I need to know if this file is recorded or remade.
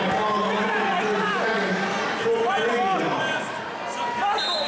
recorded